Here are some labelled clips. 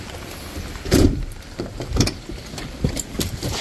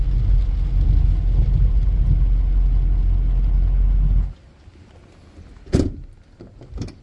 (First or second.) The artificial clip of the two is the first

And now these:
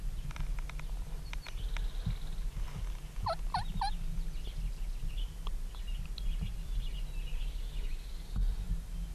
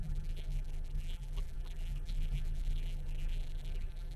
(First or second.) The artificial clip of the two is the second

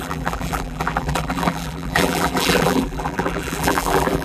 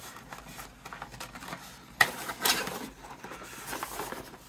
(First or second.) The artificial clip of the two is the first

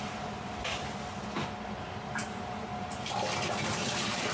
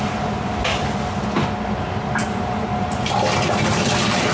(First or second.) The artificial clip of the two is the first